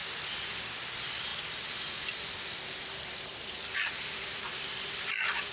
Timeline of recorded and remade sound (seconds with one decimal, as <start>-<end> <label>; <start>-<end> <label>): 0.0-5.5 recorded